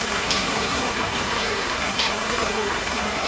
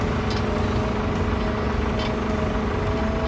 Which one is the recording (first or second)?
second